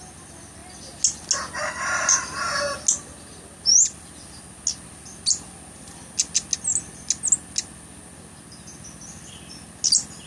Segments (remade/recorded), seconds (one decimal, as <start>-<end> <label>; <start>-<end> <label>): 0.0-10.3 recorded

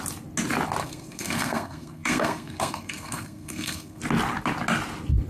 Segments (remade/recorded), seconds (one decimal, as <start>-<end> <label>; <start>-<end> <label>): 0.0-0.8 recorded; 0.8-4.0 remade; 4.0-5.3 recorded

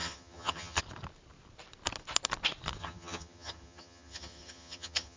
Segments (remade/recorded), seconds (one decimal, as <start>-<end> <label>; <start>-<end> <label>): 0.0-0.8 remade; 0.8-2.8 recorded; 2.8-5.2 remade